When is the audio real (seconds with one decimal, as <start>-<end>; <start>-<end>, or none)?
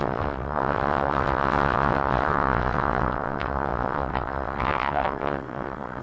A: none